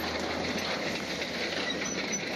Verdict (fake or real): real